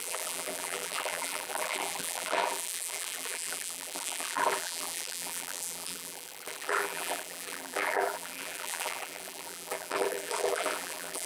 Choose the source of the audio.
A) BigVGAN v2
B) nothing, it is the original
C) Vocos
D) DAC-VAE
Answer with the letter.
A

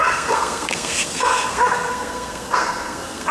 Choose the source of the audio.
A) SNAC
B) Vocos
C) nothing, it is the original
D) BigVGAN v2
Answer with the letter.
A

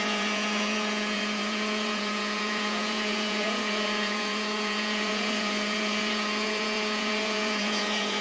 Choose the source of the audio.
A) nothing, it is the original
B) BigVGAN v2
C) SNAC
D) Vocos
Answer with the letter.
D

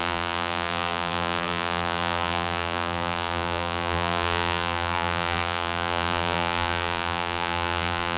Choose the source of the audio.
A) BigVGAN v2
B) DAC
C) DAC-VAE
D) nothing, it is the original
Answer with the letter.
A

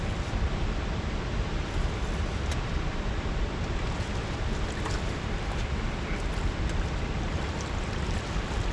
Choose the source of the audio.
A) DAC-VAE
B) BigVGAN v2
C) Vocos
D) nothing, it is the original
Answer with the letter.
B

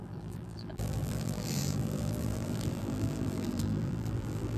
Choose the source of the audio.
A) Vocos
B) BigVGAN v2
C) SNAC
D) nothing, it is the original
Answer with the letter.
B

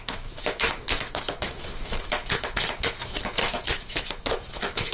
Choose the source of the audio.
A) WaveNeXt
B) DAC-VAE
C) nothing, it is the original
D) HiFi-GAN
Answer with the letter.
B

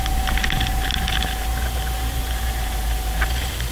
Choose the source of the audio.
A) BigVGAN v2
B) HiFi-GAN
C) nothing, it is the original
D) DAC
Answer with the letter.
C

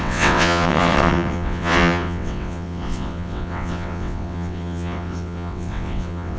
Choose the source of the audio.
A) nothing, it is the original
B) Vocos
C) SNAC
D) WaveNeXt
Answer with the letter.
D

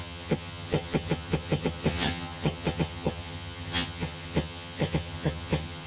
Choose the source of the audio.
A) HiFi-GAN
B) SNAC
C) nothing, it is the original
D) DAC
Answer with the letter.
A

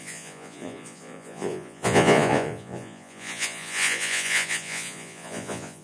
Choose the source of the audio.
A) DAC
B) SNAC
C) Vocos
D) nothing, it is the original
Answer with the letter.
C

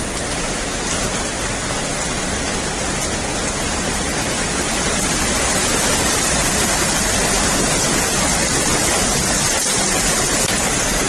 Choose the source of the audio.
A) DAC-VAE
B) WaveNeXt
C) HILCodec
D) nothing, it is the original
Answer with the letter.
D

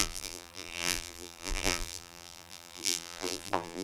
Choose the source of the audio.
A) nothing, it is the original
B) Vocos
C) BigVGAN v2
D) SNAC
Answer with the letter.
C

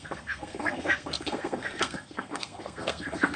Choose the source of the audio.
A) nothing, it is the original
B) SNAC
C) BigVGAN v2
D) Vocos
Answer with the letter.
B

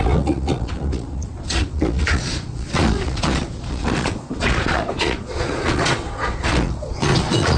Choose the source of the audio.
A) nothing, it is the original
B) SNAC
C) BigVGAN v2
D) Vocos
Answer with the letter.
D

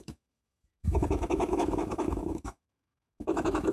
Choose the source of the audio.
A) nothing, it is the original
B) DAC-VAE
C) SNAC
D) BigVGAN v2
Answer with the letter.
B